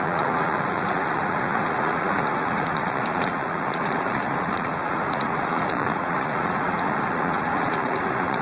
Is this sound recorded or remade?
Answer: remade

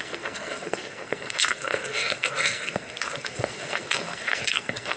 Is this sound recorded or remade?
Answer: remade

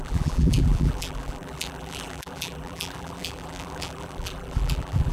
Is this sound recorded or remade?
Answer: remade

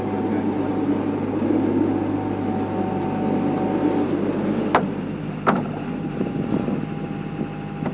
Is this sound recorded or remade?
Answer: recorded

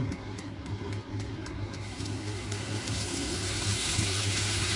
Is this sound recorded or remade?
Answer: remade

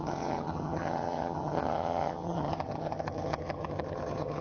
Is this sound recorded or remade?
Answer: remade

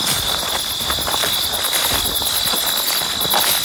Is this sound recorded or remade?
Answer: recorded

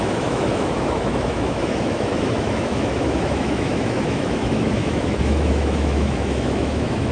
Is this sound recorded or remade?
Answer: remade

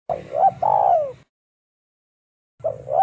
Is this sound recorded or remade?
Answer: recorded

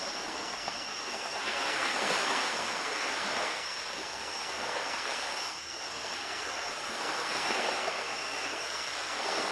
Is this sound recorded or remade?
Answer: remade